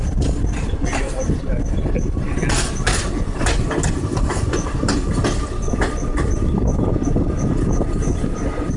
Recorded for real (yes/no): yes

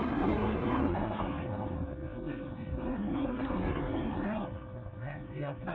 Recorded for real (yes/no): no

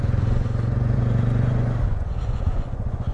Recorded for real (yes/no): no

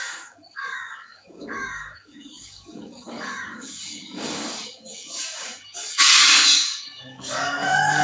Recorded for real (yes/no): no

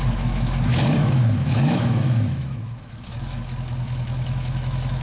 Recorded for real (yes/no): no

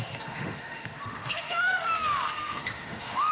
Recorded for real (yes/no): no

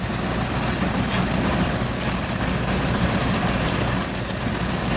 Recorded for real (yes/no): yes